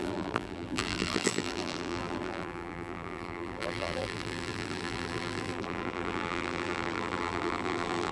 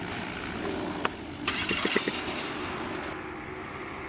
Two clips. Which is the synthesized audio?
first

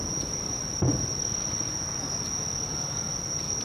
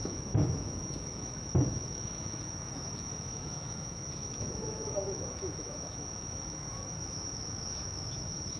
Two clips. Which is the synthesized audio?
second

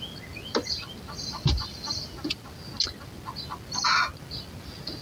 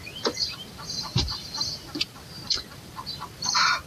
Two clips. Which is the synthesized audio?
second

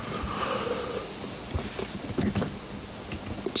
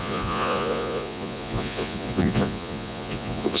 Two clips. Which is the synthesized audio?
second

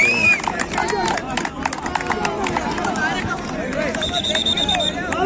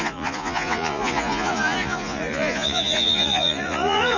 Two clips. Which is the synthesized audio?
second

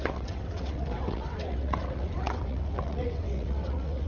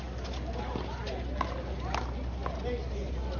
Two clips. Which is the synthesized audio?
first